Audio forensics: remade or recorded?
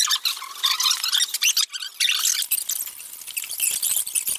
recorded